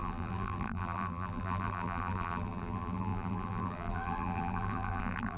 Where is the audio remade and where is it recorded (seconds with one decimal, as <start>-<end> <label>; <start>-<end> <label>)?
0.0-5.4 remade